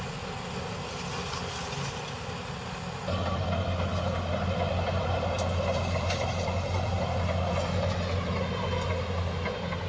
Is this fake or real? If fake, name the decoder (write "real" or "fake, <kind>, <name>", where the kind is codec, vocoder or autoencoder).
real